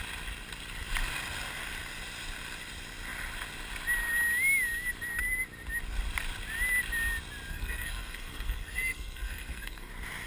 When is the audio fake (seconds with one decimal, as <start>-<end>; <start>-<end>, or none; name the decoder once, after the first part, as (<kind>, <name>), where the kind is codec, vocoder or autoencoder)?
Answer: 7.5-9.9 (codec, SNAC)